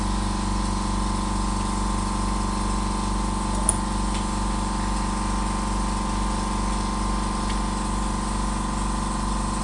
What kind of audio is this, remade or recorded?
recorded